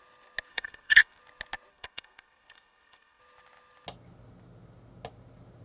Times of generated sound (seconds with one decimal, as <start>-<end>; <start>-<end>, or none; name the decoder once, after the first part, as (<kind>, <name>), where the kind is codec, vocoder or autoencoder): 0.5-1.2 (codec, SNAC); 1.7-3.2